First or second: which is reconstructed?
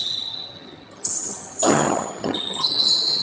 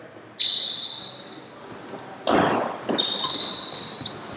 first